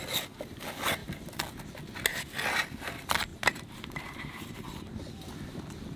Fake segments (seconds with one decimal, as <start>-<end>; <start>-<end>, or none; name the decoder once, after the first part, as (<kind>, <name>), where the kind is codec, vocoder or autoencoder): 3.3-4.8 (vocoder, BigVGAN v2)